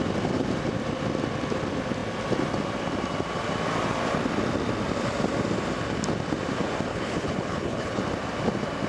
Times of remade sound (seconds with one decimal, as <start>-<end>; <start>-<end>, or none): 6.9-8.0